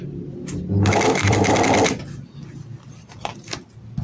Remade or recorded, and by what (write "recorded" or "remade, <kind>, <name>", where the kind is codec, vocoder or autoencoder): remade, vocoder, BigVGAN v2